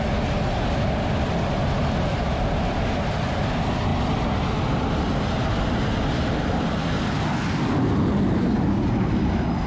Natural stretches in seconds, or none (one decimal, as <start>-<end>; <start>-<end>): 0.0-9.7